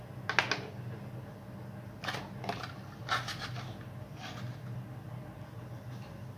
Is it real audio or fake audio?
real